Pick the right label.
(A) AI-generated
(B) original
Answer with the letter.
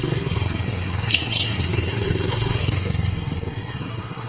A